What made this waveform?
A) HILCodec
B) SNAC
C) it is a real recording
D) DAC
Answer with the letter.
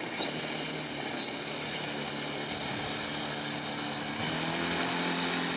C